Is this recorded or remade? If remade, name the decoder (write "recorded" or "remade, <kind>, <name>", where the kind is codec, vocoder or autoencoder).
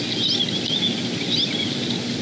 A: recorded